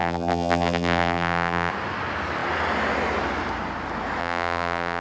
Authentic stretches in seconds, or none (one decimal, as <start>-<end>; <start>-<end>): 1.7-4.2